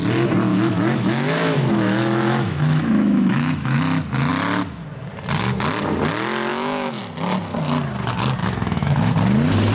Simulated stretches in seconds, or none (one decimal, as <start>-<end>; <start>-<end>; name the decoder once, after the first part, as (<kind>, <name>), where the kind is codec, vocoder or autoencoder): 0.5-3.8 (autoencoder, DAC-VAE); 6.5-7.0; 8.4-9.1